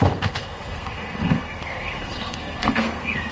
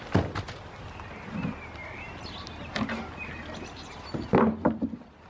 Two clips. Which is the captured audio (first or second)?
second